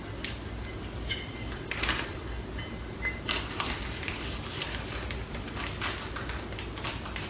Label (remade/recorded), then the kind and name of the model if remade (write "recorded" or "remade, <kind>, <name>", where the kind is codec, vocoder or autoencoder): recorded